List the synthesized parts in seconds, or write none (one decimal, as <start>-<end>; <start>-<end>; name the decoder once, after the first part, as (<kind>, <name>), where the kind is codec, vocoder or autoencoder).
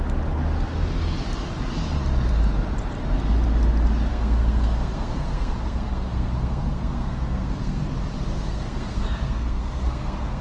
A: 4.1-7.8 (codec, SNAC); 8.3-10.4